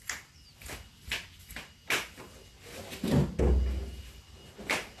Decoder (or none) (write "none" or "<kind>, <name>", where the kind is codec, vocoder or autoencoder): none